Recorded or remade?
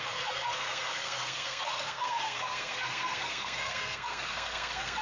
remade